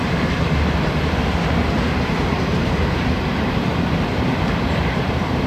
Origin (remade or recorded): remade